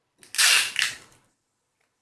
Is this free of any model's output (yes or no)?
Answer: yes